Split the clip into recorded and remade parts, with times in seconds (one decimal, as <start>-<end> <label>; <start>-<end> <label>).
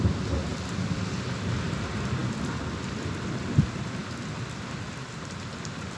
0.0-6.0 recorded